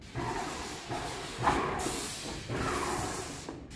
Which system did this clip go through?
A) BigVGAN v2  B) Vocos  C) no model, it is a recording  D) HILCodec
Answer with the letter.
C